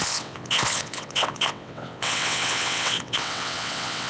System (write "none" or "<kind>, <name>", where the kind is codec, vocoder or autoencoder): vocoder, WaveNeXt